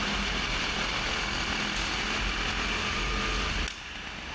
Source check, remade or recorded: recorded